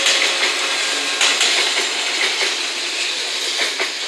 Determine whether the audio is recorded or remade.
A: recorded